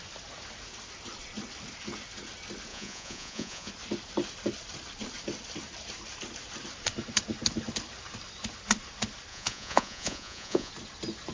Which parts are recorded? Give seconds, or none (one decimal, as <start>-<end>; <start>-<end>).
0.0-2.7; 3.7-9.3; 10.7-11.3